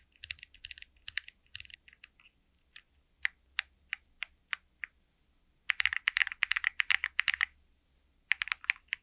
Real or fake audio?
real